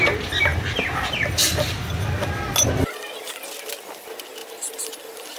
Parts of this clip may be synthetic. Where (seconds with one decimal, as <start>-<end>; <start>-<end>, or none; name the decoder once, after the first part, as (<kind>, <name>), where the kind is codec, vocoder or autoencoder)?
4.4-5.4 (vocoder, BigVGAN v2)